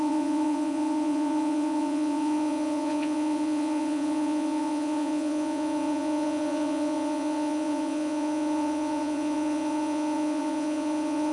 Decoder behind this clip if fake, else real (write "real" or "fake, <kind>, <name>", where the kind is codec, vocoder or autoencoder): fake, vocoder, Vocos